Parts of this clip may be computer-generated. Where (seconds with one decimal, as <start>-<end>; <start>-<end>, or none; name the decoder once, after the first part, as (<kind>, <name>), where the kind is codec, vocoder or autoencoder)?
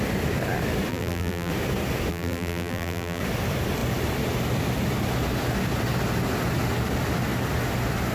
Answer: 0.9-1.5 (vocoder, BigVGAN v2); 2.1-3.2